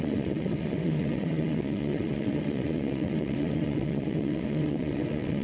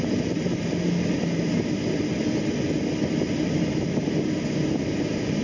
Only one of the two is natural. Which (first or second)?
second